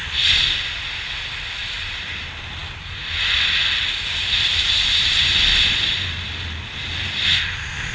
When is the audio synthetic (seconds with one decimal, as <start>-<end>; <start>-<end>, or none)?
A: 1.6-2.1